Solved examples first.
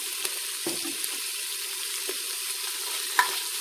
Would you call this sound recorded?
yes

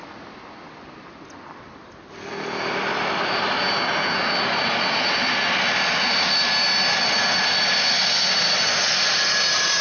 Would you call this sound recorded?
yes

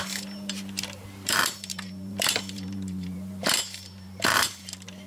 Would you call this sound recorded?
no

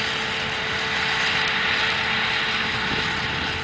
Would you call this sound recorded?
yes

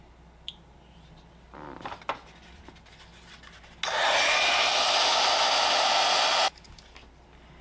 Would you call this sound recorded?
yes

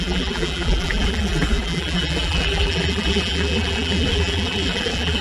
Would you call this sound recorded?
no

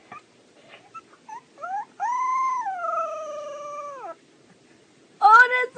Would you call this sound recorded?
yes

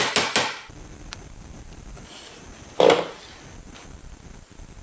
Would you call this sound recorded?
yes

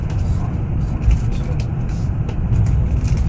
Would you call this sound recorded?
no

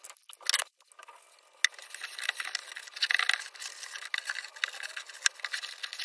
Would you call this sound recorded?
yes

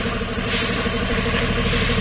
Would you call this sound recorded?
no